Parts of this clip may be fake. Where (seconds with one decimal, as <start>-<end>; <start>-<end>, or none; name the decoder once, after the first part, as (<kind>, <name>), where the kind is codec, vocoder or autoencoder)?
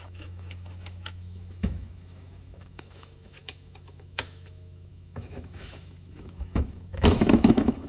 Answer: 0.0-7.9 (autoencoder, DAC-VAE)